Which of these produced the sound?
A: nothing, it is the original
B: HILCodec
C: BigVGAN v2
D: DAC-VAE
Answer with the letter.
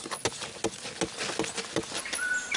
A